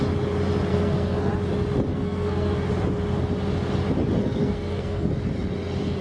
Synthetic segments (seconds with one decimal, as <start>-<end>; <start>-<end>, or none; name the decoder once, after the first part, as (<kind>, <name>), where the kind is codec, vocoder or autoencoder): 0.7-1.3 (codec, SNAC); 1.9-2.7; 4.2-5.1

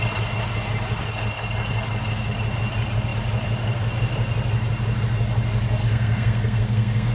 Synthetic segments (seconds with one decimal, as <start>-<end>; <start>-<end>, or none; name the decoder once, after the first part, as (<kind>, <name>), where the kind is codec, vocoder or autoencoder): 5.8-7.1 (codec, SNAC)

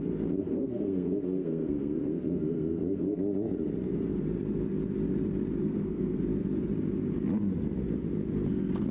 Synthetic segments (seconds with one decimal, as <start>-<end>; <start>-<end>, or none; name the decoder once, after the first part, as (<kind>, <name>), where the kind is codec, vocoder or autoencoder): 0.4-3.2 (codec, SNAC); 5.6-6.2

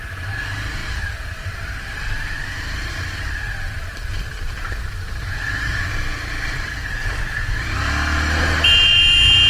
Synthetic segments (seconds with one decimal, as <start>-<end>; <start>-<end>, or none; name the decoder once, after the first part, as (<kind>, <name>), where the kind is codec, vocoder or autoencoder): none